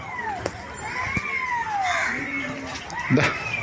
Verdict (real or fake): real